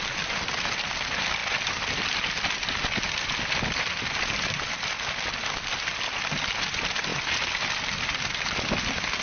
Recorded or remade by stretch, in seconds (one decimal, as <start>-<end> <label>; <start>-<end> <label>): 0.0-9.2 recorded